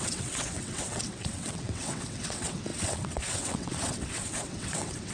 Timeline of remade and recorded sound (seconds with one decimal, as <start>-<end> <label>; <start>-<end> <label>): 0.0-5.1 remade